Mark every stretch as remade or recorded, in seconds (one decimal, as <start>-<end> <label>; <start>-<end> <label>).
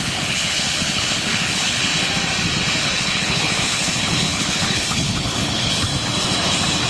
0.0-1.9 remade; 1.9-2.8 recorded; 2.8-5.9 remade; 5.9-6.9 recorded